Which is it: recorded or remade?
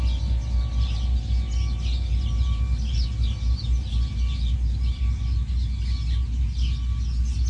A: recorded